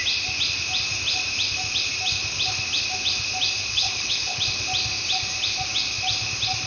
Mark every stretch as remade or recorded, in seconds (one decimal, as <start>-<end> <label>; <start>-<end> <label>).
0.0-3.7 recorded; 3.7-4.4 remade; 4.4-6.7 recorded